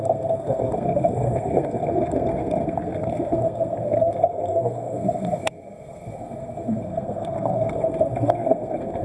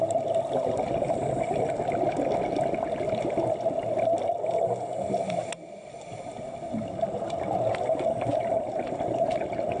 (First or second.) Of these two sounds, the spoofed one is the first